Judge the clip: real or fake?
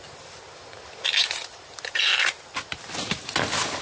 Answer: real